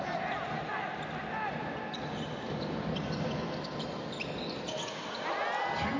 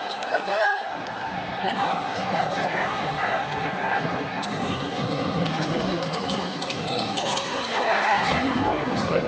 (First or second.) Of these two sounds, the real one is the first